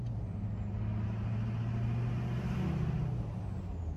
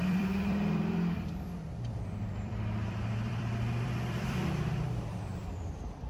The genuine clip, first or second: first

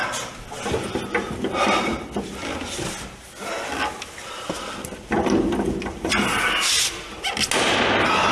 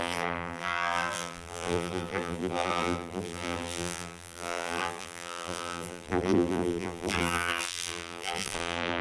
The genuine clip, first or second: first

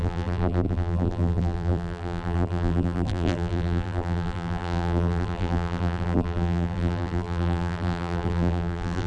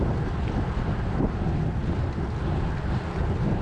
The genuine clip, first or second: second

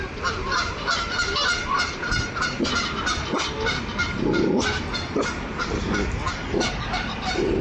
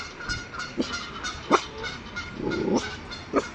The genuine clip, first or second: second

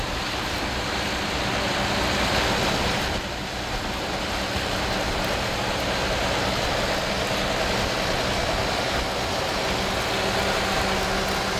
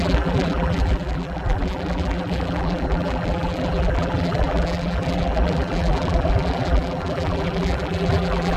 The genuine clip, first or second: first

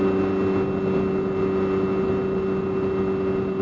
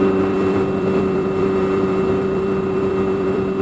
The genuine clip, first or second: first